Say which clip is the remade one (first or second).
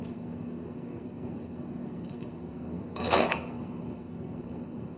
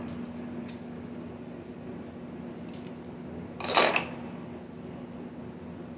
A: first